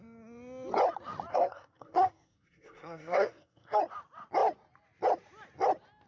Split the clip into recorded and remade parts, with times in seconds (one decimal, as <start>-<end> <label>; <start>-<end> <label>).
0.0-1.3 recorded; 1.3-3.8 remade; 3.8-6.1 recorded